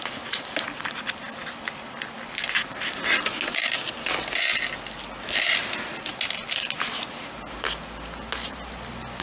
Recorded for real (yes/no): yes